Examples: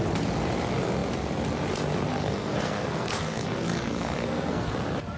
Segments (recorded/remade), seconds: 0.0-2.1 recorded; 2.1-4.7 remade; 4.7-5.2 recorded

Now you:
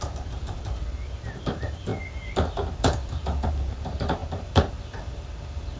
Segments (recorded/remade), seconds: 0.0-1.9 remade; 1.9-2.8 recorded; 2.8-5.8 remade

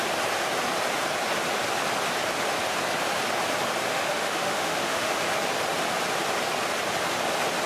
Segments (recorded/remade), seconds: 0.0-3.9 recorded; 3.9-5.2 remade; 5.2-7.7 recorded

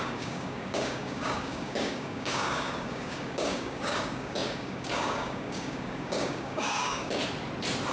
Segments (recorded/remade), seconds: 0.0-7.2 remade; 7.2-7.9 recorded

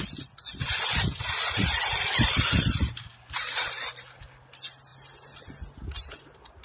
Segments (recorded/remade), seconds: 0.0-6.6 recorded

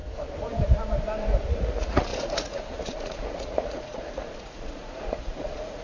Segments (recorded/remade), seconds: 0.0-1.5 recorded; 1.5-5.8 remade

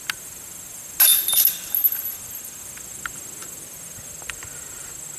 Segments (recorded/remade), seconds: 0.0-5.2 recorded

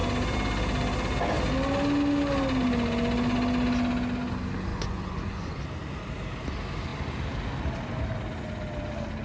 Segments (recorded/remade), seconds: 0.0-4.7 recorded; 4.7-5.6 remade; 5.6-9.2 recorded